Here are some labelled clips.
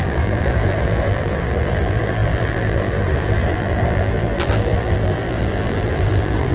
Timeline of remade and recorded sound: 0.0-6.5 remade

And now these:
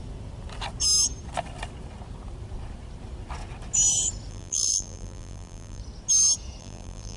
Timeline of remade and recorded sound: 0.0-4.3 recorded; 4.3-5.8 remade; 5.8-6.6 recorded; 6.6-7.2 remade

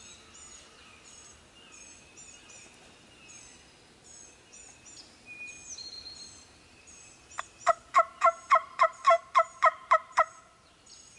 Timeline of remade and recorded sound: 0.0-5.8 recorded; 5.8-10.5 remade; 10.5-11.2 recorded

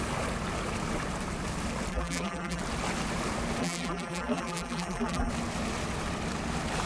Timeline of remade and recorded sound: 0.0-1.9 recorded; 1.9-2.6 remade; 2.6-3.6 recorded; 3.6-5.3 remade; 5.3-6.9 recorded